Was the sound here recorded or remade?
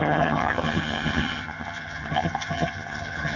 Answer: remade